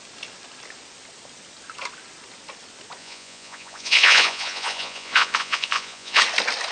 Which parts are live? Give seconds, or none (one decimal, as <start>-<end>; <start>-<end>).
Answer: 0.0-3.0; 6.2-6.7